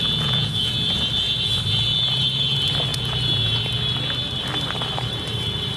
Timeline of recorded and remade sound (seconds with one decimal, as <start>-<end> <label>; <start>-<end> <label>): 0.0-0.6 remade; 0.6-2.9 recorded; 2.9-3.6 remade; 3.6-5.8 recorded